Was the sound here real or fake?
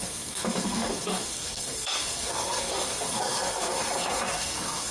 fake